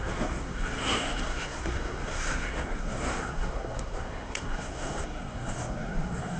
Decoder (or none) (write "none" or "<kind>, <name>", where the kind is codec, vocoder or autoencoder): codec, SNAC